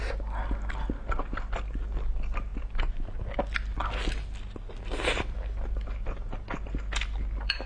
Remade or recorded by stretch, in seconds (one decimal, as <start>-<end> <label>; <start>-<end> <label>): 0.0-7.7 recorded